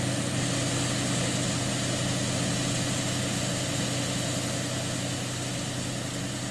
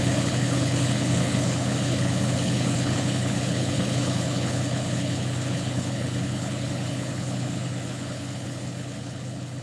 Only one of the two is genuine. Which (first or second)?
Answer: first